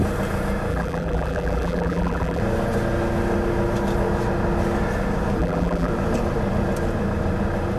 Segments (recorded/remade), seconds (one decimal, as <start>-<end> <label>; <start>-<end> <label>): 0.0-0.7 recorded; 0.7-2.4 remade; 2.4-5.4 recorded; 5.4-5.9 remade; 5.9-7.8 recorded